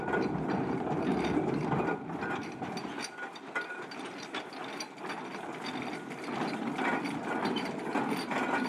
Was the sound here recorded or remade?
recorded